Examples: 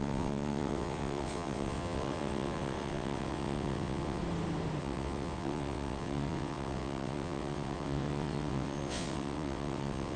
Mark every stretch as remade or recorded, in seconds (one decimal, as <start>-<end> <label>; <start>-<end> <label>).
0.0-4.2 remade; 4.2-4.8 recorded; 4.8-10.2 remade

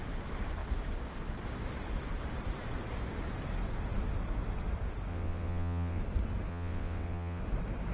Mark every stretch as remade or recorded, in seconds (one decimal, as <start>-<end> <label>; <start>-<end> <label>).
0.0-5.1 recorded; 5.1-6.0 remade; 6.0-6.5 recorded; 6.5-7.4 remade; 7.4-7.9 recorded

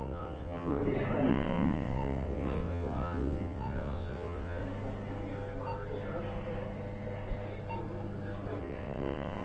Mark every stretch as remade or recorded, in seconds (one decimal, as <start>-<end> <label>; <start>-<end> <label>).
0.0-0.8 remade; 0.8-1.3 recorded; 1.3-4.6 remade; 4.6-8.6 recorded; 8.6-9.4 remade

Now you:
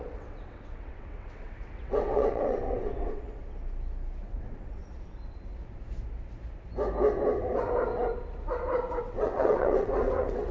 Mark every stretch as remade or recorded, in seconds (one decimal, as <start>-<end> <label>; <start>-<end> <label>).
0.0-3.4 remade; 3.4-4.2 recorded; 4.2-4.8 remade; 4.8-9.0 recorded; 9.0-10.5 remade